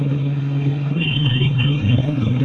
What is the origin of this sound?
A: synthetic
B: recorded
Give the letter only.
A